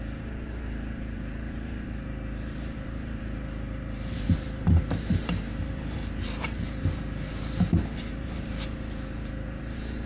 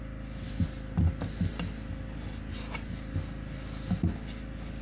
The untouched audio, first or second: second